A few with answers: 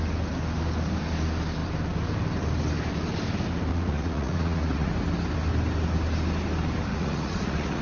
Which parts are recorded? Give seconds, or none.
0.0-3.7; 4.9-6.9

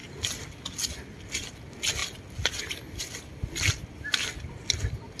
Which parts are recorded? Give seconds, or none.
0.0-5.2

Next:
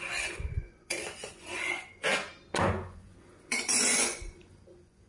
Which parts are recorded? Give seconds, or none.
2.1-2.6

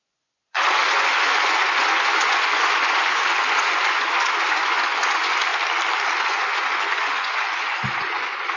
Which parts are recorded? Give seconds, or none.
5.5-6.2

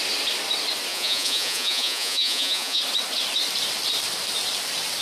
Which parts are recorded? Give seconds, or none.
0.0-0.9; 2.8-5.0

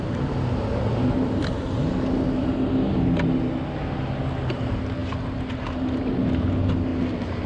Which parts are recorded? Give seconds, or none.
0.0-7.5

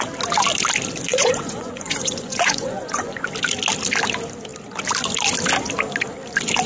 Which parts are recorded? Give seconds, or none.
0.0-1.1; 3.3-6.7